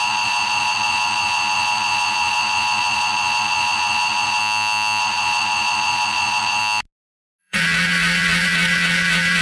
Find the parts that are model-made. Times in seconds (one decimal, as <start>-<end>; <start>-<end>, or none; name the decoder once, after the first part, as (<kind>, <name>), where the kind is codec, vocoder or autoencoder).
0.0-4.4 (vocoder, Vocos); 5.0-6.6; 7.4-9.4